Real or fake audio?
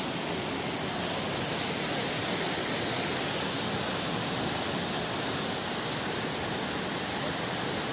real